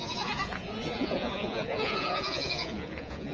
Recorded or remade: remade